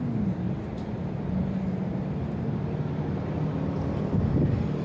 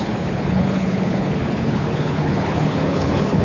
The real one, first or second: first